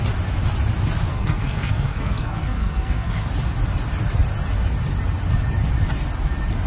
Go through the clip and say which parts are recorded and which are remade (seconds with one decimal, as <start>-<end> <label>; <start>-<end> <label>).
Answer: 0.0-1.1 recorded; 1.1-3.3 remade; 3.3-6.7 recorded